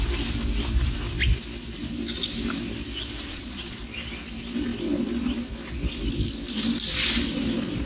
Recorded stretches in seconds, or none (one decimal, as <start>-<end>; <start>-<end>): 0.0-3.3; 3.8-7.9